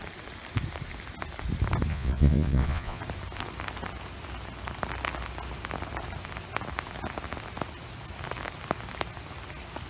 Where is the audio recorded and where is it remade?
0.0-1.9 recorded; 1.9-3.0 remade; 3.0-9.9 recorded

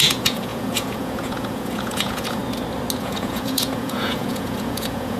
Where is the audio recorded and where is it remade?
0.0-2.4 remade; 2.4-3.0 recorded; 3.0-5.2 remade

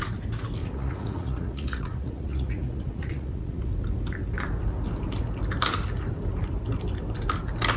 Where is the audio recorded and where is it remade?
0.0-0.6 recorded; 0.6-3.7 remade; 3.7-7.8 recorded

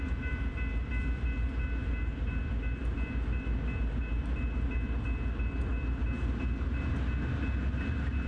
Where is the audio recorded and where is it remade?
0.0-8.3 recorded

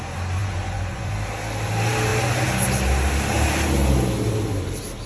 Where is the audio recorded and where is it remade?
0.0-0.4 recorded; 0.4-1.1 remade; 1.1-5.1 recorded

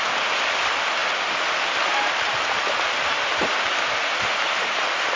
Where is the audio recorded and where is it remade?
0.0-5.2 recorded

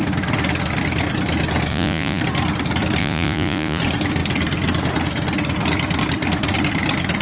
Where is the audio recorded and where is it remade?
0.0-1.7 recorded; 1.7-2.2 remade; 2.2-3.0 recorded; 3.0-3.8 remade; 3.8-7.2 recorded